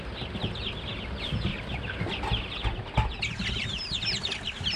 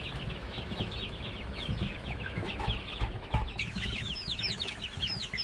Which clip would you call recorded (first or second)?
first